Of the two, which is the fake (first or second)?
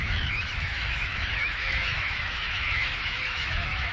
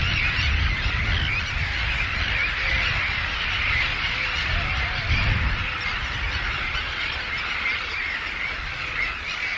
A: first